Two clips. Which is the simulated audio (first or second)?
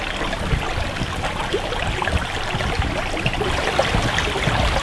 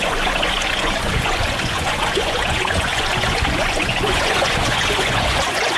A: second